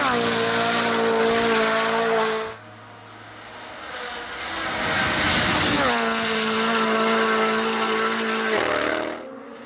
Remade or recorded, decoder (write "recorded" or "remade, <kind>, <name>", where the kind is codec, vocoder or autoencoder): recorded